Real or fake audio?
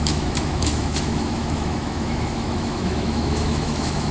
fake